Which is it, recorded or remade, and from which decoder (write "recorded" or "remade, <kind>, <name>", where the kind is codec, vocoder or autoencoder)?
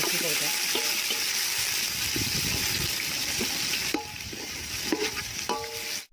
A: recorded